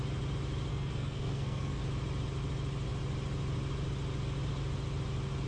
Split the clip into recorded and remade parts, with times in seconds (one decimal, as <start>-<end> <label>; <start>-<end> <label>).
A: 0.0-0.7 recorded; 0.7-1.8 remade; 1.8-5.5 recorded